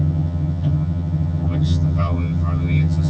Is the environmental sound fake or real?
fake